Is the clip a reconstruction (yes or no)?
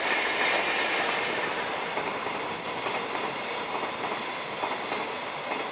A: yes